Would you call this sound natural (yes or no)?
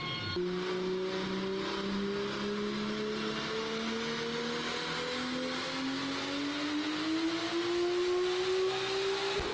yes